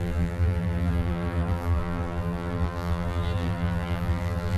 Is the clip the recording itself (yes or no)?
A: no